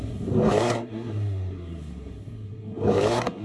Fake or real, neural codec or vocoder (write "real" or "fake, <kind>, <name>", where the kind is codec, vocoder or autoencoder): fake, codec, SNAC